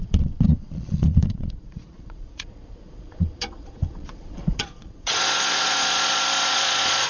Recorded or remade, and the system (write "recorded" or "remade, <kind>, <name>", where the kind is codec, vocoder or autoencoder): remade, vocoder, Vocos